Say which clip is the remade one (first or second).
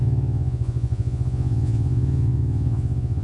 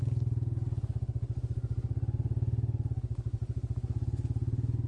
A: first